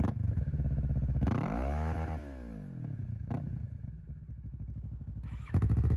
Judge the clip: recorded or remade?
remade